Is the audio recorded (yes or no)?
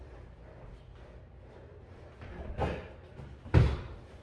yes